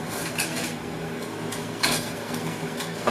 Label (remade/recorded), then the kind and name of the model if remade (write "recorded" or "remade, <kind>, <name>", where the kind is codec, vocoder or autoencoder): remade, codec, SNAC